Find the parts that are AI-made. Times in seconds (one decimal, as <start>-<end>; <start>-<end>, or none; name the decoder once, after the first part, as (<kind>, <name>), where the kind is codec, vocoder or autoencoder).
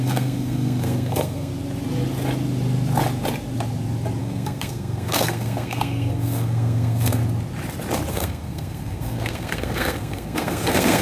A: 0.0-1.5 (codec, SNAC); 4.2-7.2; 8.1-11.0